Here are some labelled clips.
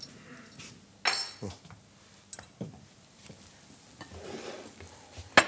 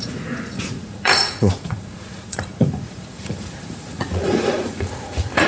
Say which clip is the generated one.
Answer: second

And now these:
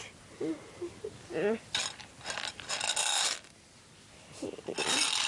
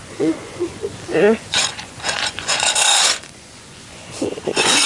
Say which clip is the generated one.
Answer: second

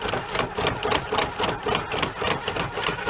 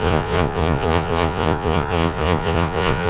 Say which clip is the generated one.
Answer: second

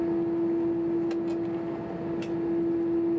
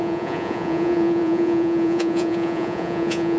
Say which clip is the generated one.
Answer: second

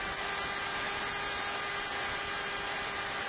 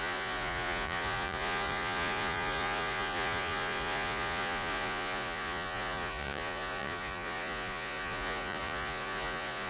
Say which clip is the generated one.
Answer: second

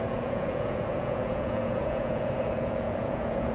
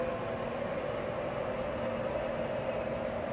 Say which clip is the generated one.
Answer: first